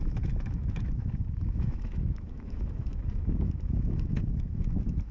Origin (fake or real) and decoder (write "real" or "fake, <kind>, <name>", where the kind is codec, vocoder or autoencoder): fake, autoencoder, DAC-VAE